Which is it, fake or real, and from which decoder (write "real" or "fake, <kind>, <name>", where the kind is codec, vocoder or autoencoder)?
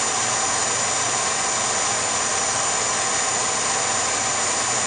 real